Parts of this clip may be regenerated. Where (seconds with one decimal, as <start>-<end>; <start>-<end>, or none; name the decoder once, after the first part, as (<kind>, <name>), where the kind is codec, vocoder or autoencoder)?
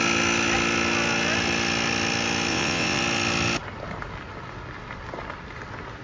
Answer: 2.5-3.0 (vocoder, WaveNeXt)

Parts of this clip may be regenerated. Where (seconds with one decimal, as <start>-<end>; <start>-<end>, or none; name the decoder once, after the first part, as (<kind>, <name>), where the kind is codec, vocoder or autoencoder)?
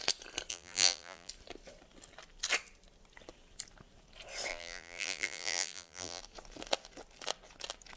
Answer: 0.5-1.3 (vocoder, BigVGAN v2); 4.5-6.2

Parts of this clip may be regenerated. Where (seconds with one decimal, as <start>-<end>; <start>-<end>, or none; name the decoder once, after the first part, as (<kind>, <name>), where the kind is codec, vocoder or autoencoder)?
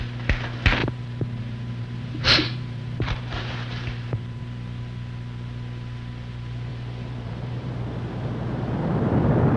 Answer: 0.8-4.4 (vocoder, BigVGAN v2); 6.7-7.7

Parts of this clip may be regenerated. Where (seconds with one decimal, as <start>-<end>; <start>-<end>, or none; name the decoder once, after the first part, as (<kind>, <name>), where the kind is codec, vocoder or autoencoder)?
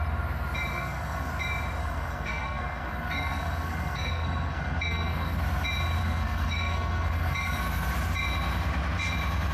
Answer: 0.7-1.3 (codec, SNAC); 1.8-5.4; 6.0-7.6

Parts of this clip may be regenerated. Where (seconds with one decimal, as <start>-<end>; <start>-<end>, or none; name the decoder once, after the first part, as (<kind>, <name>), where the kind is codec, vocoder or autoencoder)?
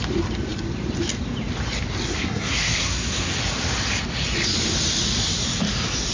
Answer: 2.0-3.3 (codec, SNAC)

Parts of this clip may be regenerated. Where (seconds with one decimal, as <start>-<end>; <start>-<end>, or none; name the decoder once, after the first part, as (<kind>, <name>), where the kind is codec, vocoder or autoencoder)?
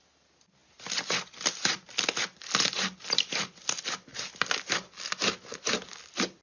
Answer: none